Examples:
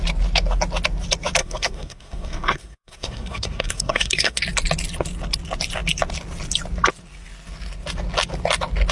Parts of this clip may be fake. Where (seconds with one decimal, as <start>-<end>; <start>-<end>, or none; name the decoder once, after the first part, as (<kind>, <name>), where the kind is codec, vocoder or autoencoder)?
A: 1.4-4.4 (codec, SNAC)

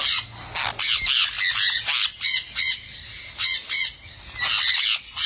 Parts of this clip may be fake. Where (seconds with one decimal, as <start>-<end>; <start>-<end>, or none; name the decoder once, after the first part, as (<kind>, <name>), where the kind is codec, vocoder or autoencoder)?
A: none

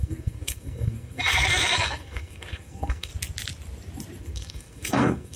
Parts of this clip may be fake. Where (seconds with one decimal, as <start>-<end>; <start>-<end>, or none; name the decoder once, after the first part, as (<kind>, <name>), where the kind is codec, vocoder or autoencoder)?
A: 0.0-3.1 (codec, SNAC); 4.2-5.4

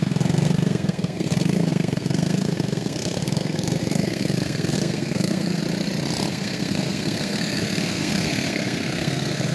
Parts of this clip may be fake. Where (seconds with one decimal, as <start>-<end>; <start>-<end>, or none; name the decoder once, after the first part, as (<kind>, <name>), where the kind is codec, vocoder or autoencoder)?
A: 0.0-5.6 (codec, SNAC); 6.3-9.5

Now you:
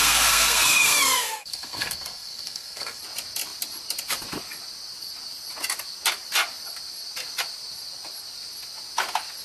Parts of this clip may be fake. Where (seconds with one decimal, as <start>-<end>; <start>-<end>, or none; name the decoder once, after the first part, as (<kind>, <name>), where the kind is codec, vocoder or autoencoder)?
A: 0.0-3.0 (codec, SNAC)

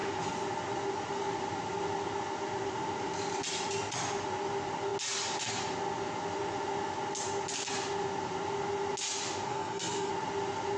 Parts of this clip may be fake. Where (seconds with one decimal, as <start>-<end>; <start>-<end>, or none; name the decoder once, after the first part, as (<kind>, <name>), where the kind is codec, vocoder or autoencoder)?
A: 9.5-10.1 (codec, SNAC)

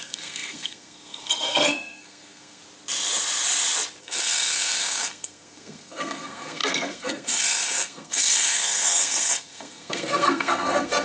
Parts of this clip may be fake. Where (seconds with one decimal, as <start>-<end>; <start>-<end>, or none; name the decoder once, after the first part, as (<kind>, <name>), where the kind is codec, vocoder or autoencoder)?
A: 0.0-2.6 (codec, SNAC); 4.0-11.0